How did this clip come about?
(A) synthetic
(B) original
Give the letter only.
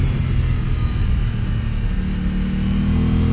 B